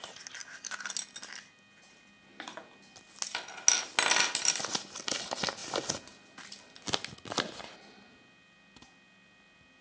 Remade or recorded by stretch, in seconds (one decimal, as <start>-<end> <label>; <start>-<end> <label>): 0.0-9.8 recorded